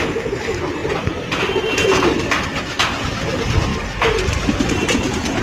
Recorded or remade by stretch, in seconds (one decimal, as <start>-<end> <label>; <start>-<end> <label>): 0.0-5.4 recorded